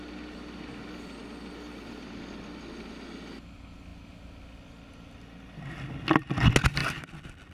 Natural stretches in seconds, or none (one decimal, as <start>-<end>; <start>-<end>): 0.0-7.5